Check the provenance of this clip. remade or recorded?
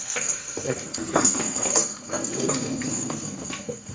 remade